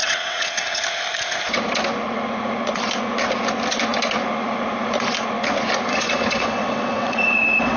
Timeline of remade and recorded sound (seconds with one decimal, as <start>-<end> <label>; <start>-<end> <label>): 0.0-0.8 remade; 0.8-5.9 recorded; 5.9-7.8 remade